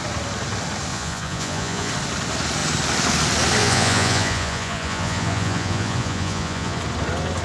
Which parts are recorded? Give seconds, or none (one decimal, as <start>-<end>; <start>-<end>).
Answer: 0.0-0.9; 1.9-3.6; 6.8-7.4